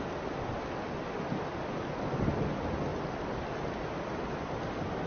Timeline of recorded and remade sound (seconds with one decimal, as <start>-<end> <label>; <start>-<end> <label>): 0.0-5.1 recorded